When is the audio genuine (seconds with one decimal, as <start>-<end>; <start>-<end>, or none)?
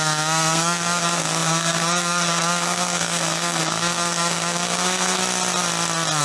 5.2-6.2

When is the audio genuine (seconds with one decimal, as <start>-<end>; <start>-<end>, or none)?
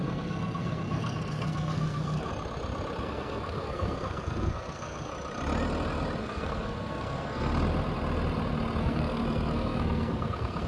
2.3-3.0; 5.1-6.2; 7.5-8.8